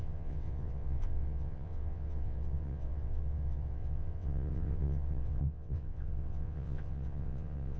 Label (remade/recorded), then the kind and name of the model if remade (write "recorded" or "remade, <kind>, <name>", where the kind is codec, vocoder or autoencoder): remade, vocoder, WaveNeXt